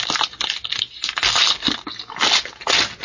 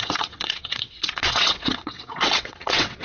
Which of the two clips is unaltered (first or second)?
first